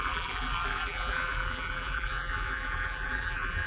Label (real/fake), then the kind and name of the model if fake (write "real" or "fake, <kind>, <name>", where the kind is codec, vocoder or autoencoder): fake, vocoder, BigVGAN v2